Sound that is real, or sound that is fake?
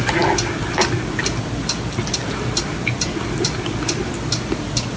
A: real